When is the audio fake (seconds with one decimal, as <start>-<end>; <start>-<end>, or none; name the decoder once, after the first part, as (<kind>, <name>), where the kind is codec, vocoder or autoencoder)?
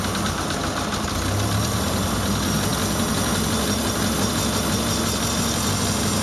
none